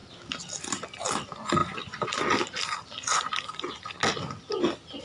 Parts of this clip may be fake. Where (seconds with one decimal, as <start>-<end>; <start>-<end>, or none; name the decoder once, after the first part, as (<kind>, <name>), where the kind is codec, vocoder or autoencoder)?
none